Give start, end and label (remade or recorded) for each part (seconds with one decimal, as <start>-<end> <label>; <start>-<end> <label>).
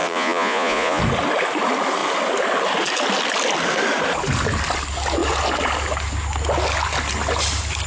0.0-1.0 remade; 1.0-7.9 recorded